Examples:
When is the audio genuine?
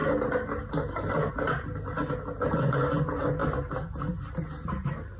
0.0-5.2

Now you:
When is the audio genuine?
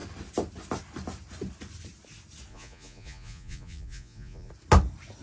0.0-2.5; 4.5-5.2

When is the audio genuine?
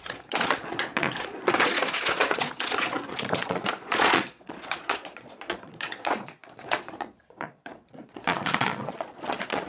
none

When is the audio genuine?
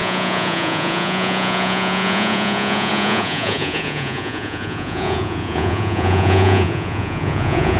none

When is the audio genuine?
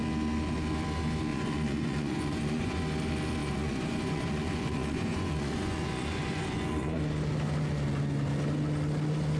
0.0-1.3; 2.8-3.4; 7.0-9.4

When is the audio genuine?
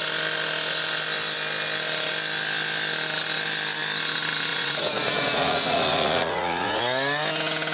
0.0-4.5; 6.8-7.7